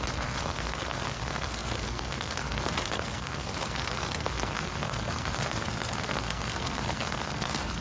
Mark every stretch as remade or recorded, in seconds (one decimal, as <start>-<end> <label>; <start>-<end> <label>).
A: 0.0-7.8 remade